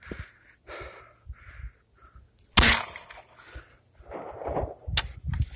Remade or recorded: recorded